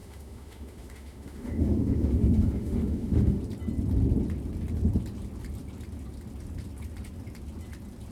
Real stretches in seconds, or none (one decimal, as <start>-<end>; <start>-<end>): 3.4-8.1